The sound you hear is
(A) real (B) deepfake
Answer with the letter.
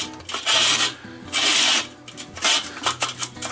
A